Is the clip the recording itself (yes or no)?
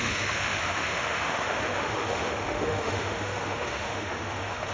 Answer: no